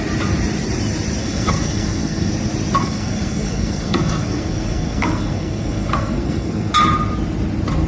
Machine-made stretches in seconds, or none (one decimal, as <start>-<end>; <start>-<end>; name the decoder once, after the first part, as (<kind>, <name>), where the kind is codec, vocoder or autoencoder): 1.2-2.3 (codec, SNAC); 2.8-6.7